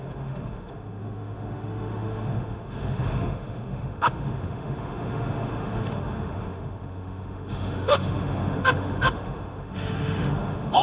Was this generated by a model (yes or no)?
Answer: yes